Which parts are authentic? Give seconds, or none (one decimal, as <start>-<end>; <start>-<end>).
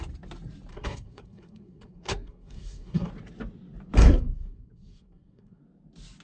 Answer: 0.0-0.7; 3.1-4.0; 5.6-6.2